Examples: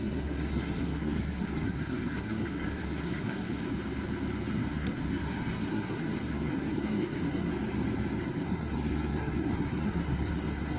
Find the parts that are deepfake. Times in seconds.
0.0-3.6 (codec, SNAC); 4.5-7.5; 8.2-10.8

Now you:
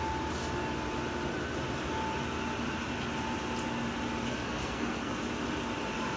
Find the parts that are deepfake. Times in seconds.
4.3-5.2 (codec, SNAC)

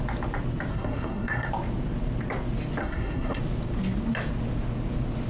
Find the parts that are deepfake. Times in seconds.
0.7-1.5 (codec, SNAC); 2.8-3.4

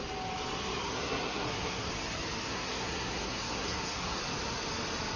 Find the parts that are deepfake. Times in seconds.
0.8-1.9 (codec, SNAC); 2.5-4.2